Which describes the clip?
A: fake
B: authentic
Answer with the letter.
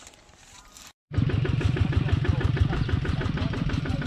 A